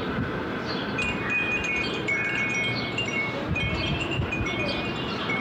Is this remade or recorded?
remade